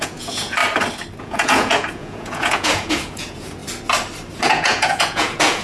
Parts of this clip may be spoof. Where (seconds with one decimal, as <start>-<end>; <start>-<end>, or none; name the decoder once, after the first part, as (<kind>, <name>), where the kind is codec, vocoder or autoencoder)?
0.0-0.6 (vocoder, Vocos); 1.2-3.6; 4.4-5.6